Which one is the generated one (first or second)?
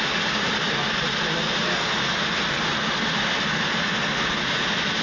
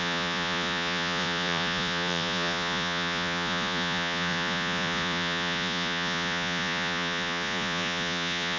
second